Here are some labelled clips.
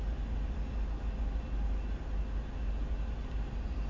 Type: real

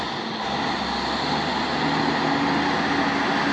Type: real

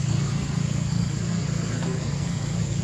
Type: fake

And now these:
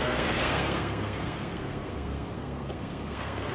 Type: fake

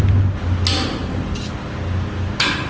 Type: real